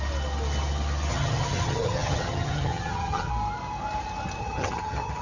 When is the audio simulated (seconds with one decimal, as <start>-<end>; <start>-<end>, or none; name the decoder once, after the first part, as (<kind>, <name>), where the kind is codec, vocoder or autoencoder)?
1.1-3.3 (vocoder, HiFi-GAN); 4.4-5.2